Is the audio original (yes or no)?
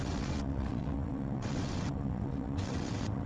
no